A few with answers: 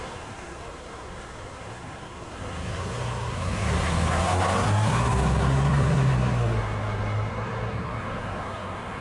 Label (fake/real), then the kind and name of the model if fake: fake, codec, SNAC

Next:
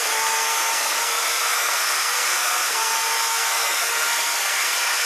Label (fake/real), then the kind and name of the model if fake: fake, codec, SNAC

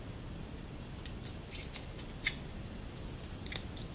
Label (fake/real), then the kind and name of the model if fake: real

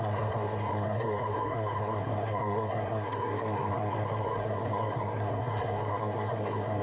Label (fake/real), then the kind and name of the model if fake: fake, codec, SNAC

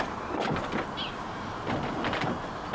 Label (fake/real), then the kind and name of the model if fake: real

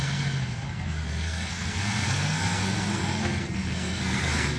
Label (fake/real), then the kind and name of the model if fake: fake, codec, SNAC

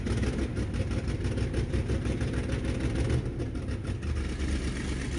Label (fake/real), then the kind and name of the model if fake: real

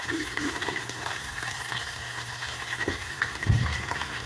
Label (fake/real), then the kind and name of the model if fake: fake, codec, SNAC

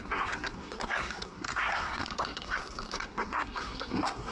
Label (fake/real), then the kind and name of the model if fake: fake, codec, SNAC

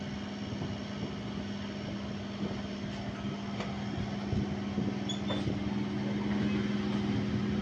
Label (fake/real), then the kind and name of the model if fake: real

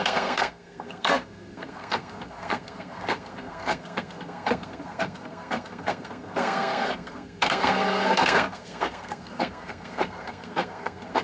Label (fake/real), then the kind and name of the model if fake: fake, codec, SNAC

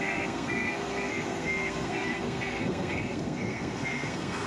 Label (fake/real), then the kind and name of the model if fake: fake, codec, SNAC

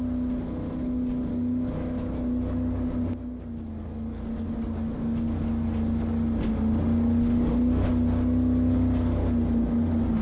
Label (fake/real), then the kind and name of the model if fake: real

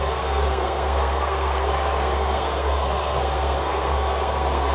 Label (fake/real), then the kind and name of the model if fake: fake, codec, SNAC